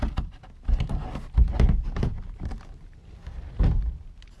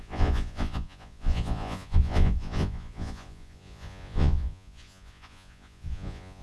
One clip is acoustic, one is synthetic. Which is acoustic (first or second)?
first